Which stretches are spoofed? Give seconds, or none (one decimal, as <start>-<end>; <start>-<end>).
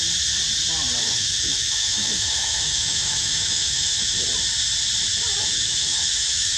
1.0-4.2; 5.4-6.6